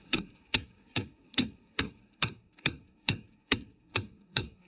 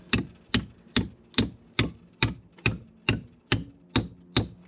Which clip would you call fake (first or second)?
first